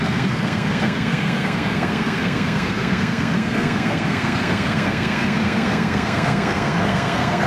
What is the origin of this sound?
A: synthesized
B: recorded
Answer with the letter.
A